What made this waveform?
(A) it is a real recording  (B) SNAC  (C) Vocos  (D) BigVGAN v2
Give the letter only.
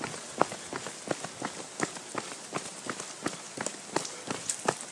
A